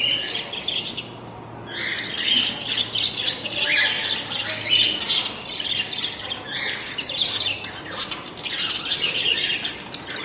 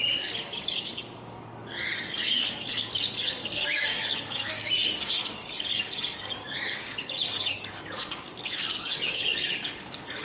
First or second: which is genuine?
first